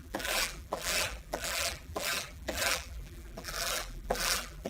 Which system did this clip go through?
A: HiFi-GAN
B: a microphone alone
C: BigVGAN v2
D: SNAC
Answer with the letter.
C